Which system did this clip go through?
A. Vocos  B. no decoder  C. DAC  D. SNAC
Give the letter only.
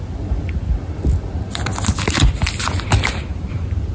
B